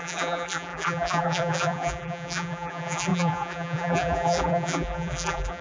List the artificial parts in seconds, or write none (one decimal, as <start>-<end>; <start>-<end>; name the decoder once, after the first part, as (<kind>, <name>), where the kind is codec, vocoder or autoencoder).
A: 0.0-5.6 (vocoder, BigVGAN v2)